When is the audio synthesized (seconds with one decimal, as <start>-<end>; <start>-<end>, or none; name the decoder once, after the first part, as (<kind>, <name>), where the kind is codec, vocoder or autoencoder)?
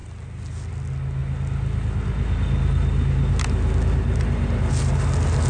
none